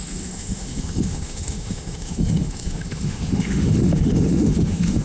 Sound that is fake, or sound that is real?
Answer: fake